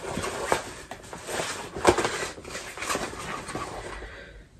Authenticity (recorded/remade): recorded